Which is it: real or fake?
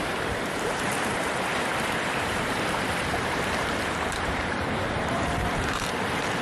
fake